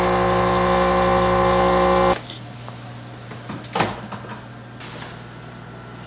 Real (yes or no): yes